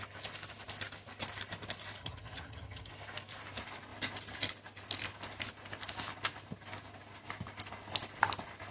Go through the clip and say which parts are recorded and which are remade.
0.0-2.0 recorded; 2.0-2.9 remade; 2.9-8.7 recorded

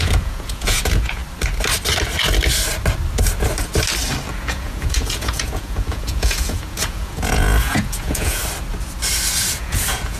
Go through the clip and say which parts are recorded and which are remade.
0.0-1.2 remade; 1.2-4.3 recorded; 4.3-8.4 remade; 8.4-9.5 recorded; 9.5-10.2 remade

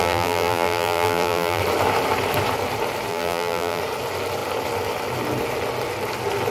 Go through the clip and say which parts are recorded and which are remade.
0.0-1.6 remade; 1.6-3.1 recorded; 3.1-3.8 remade; 3.8-6.5 recorded

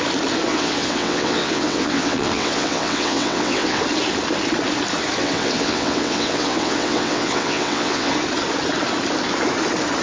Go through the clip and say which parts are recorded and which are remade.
0.0-0.5 recorded; 0.5-3.8 remade; 3.8-5.2 recorded; 5.2-8.1 remade; 8.1-10.0 recorded